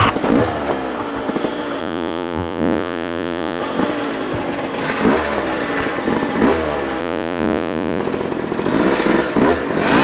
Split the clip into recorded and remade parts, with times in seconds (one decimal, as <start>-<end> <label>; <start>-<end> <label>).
0.0-1.8 recorded; 1.8-3.6 remade; 3.6-7.0 recorded; 7.0-8.0 remade; 8.0-10.0 recorded